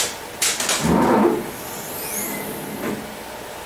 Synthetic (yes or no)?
no